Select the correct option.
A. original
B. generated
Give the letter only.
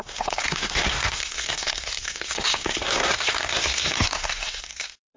B